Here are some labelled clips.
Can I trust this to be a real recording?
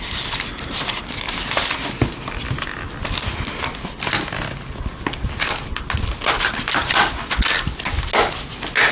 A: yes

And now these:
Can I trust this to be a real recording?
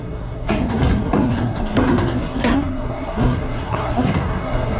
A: no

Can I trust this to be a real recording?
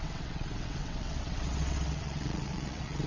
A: no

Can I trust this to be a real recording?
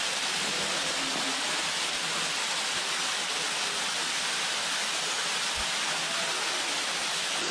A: yes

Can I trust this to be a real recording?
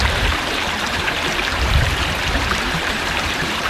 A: no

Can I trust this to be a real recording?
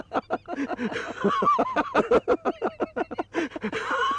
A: yes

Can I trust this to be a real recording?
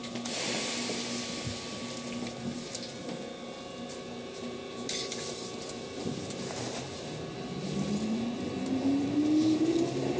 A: yes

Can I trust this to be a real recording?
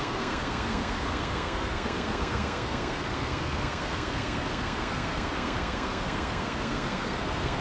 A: no